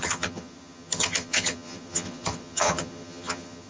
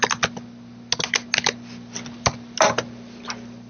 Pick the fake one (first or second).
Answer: first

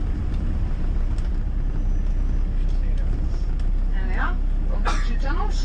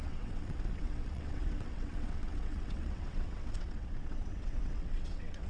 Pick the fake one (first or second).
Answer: second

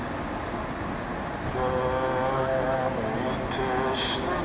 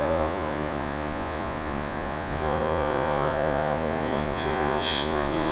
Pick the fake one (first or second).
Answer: second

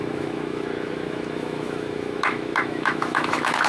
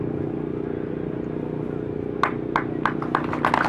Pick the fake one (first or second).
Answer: first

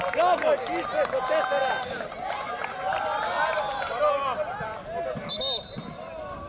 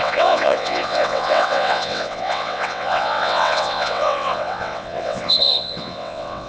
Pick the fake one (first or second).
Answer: second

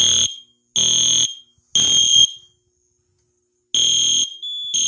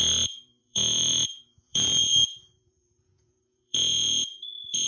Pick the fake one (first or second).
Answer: second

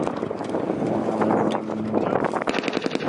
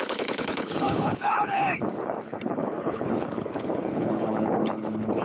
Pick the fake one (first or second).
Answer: second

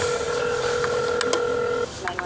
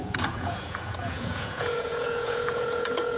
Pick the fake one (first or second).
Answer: second